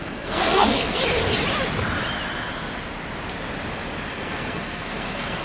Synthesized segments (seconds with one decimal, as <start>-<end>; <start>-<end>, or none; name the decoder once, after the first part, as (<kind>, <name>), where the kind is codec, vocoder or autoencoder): 0.0-1.0 (codec, SNAC); 4.1-5.4